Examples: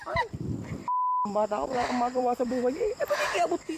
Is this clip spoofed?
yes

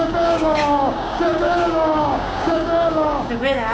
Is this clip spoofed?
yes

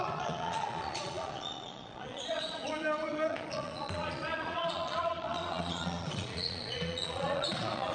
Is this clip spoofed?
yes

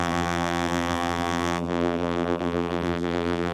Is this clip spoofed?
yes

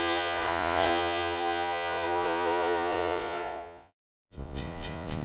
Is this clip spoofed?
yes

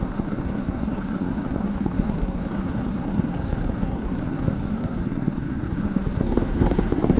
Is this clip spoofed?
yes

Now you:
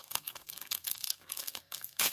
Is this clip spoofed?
yes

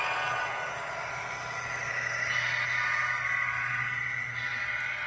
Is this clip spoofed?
no